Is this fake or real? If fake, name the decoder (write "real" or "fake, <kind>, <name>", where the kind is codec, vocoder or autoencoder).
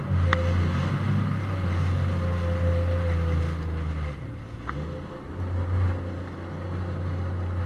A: real